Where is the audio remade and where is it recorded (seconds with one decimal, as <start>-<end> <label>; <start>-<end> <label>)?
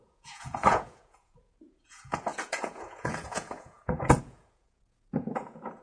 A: 0.0-5.8 remade